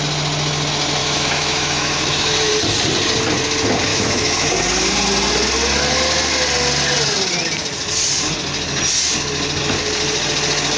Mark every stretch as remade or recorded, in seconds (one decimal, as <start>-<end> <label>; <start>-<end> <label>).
0.0-1.0 recorded; 1.0-2.5 remade; 2.5-3.9 recorded; 3.9-4.5 remade; 4.5-10.8 recorded